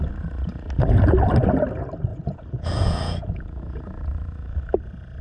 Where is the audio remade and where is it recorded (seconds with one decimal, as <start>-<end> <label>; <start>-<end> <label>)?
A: 0.0-2.1 recorded; 2.1-3.8 remade; 3.8-5.2 recorded

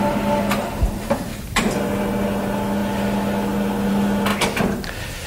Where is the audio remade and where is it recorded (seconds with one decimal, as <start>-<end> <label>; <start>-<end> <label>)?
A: 0.0-5.3 recorded

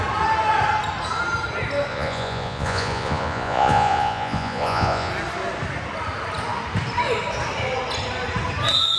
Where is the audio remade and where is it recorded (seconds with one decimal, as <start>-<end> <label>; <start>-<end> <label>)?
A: 0.0-1.9 recorded; 1.9-5.1 remade; 5.1-9.0 recorded

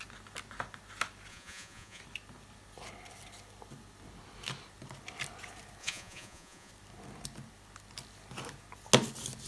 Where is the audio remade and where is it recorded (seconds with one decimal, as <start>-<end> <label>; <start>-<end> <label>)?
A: 0.0-1.3 recorded; 1.3-2.0 remade; 2.0-5.8 recorded; 5.8-6.7 remade; 6.7-9.5 recorded

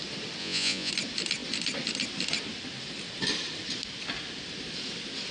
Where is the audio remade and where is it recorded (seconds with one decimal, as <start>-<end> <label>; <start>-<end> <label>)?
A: 0.0-0.4 recorded; 0.4-0.9 remade; 0.9-5.3 recorded

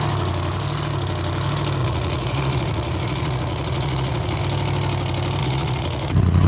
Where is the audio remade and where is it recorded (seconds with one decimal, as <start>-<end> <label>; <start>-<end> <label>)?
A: 0.0-1.8 recorded; 1.8-4.4 remade; 4.4-5.4 recorded; 5.4-6.5 remade